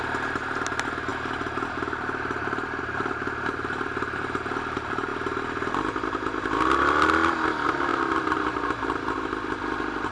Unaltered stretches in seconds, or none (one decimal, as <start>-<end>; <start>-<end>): 0.0-10.1